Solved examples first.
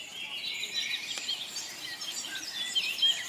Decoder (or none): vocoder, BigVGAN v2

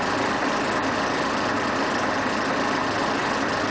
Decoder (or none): none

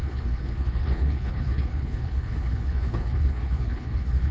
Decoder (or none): codec, HILCodec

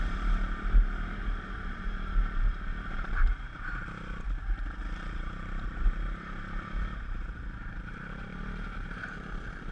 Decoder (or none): vocoder, BigVGAN v2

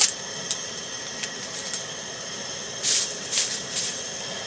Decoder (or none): none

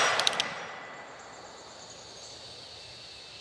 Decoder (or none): none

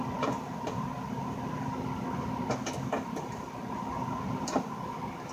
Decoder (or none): none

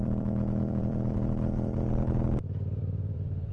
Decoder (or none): vocoder, BigVGAN v2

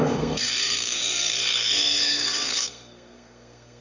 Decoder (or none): codec, SNAC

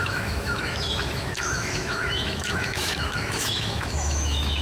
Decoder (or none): autoencoder, DAC-VAE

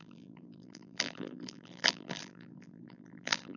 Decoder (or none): vocoder, BigVGAN v2